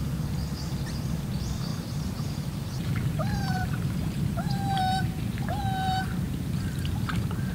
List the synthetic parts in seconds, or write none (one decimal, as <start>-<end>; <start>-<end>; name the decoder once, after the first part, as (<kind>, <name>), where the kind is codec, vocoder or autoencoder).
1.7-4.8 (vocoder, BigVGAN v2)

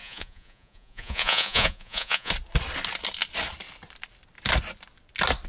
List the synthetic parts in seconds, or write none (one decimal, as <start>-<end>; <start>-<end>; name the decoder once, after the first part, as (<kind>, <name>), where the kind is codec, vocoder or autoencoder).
0.0-2.3 (vocoder, Vocos)

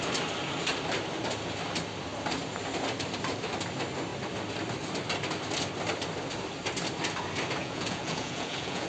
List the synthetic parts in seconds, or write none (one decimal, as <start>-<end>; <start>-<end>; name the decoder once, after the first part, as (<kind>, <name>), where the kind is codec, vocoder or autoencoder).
7.6-8.9 (vocoder, Vocos)